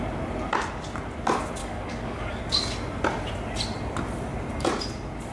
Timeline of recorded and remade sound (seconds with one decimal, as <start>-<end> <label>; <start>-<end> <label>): 0.0-1.6 recorded; 1.6-2.4 remade; 2.4-5.3 recorded